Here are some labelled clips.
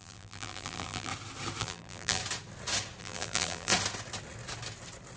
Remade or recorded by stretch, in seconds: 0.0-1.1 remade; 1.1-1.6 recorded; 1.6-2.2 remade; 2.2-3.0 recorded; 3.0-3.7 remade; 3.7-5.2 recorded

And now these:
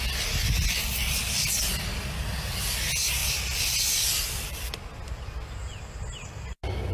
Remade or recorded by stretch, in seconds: 0.0-3.2 recorded; 3.2-5.8 remade; 5.8-6.9 recorded

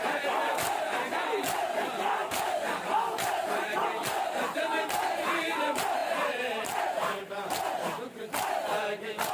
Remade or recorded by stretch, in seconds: 0.0-2.2 recorded; 2.2-3.3 remade; 3.3-9.3 recorded

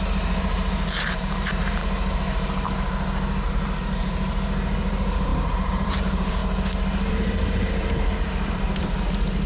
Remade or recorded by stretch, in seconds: 0.0-1.8 remade; 1.8-3.5 recorded; 3.5-6.4 remade; 6.4-7.1 recorded; 7.1-9.5 remade

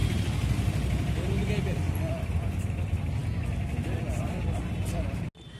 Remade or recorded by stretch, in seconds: 0.0-5.6 recorded

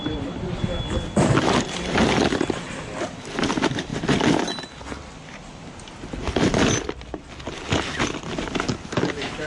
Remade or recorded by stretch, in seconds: 0.0-9.5 recorded

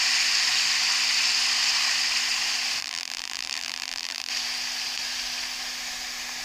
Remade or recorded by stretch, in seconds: 0.0-2.8 recorded; 2.8-4.3 remade; 4.3-6.4 recorded

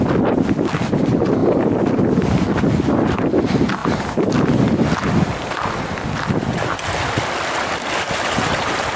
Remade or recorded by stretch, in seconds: 0.0-1.4 recorded; 1.4-1.9 remade; 1.9-3.8 recorded; 3.8-5.1 remade; 5.1-9.0 recorded